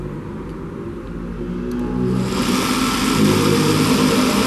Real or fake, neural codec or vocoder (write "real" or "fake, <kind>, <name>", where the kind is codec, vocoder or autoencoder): real